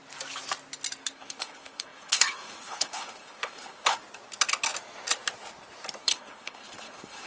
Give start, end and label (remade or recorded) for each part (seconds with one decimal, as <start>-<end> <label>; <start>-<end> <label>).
0.0-1.1 recorded; 1.1-4.0 remade; 4.0-6.0 recorded; 6.0-7.3 remade

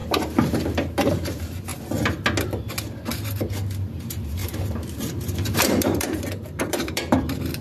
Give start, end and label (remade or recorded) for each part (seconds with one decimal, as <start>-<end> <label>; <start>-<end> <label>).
0.0-1.7 remade; 1.7-3.9 recorded; 3.9-7.6 remade